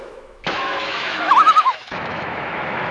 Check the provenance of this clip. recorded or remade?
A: remade